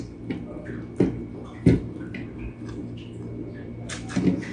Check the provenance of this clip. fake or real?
real